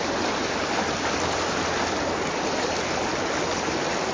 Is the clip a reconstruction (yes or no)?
no